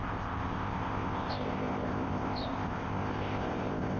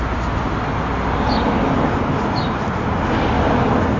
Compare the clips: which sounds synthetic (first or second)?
first